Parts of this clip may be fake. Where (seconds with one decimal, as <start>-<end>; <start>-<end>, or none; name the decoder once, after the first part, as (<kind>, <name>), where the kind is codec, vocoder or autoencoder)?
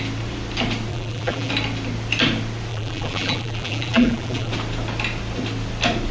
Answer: 0.9-1.5 (vocoder, BigVGAN v2); 2.7-4.5